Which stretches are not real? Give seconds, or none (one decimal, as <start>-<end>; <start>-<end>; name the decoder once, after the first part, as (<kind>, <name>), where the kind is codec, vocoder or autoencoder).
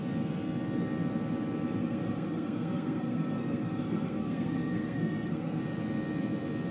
1.8-5.6 (codec, SNAC)